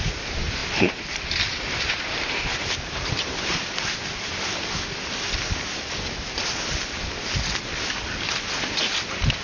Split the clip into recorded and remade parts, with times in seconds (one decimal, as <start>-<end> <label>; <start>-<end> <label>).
0.0-0.6 recorded; 0.6-4.3 remade; 4.3-9.4 recorded